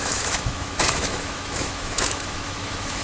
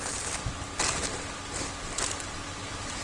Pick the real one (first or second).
second